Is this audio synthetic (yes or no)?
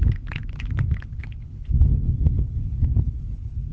yes